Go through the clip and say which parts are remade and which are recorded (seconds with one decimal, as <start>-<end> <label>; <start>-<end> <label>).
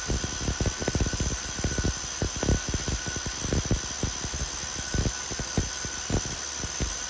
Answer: 0.0-7.1 recorded